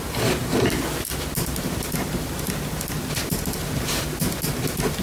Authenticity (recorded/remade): recorded